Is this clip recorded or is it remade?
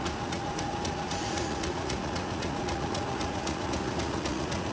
remade